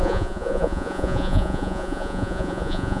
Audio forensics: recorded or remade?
remade